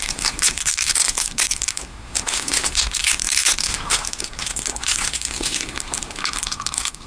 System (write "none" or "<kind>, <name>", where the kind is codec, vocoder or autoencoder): codec, SNAC